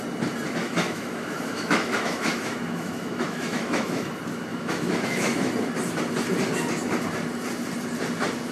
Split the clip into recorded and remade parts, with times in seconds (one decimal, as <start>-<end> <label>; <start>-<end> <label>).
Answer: 0.0-0.6 recorded; 0.6-4.1 remade; 4.1-4.5 recorded; 4.5-5.5 remade; 5.5-8.5 recorded